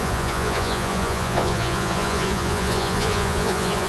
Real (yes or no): no